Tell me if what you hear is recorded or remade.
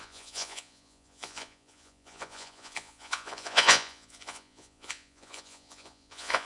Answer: remade